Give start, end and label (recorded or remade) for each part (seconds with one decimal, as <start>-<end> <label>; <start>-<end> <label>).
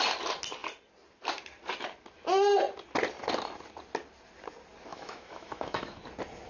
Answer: 0.0-4.9 recorded; 4.9-6.0 remade; 6.0-6.5 recorded